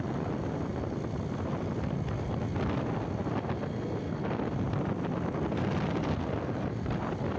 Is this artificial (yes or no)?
no